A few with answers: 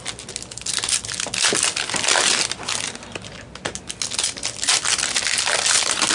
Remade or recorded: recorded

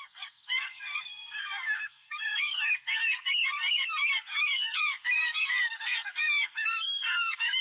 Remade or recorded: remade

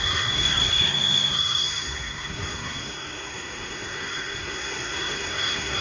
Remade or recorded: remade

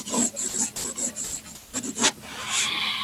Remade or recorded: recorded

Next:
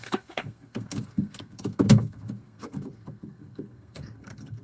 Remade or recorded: remade